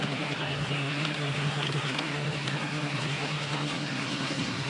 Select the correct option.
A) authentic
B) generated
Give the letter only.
B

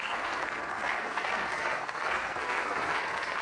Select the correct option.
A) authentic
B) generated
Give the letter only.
B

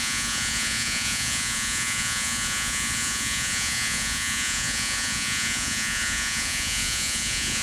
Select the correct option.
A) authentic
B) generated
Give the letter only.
B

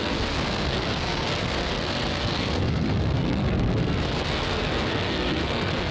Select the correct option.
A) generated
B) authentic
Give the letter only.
A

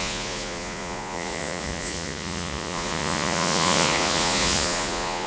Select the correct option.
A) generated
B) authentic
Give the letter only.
A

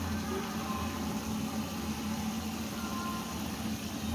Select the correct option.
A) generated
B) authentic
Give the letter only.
B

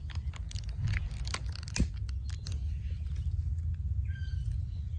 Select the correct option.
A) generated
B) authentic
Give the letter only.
B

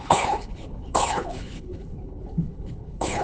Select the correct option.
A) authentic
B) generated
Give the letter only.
B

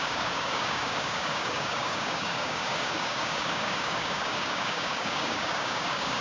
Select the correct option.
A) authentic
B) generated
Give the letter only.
B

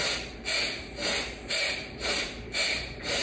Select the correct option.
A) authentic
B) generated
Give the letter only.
B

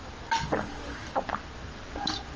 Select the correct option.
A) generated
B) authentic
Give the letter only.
B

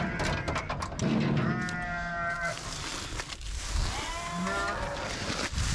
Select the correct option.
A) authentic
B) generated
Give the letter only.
A